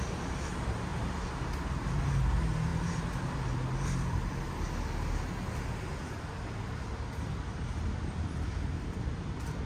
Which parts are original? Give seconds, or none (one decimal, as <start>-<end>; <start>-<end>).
0.0-2.7; 4.2-9.7